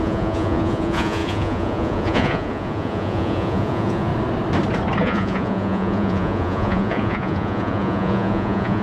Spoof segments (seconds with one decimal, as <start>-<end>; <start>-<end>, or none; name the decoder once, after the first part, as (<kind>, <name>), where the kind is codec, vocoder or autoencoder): 0.0-4.1 (vocoder, Vocos); 5.0-8.8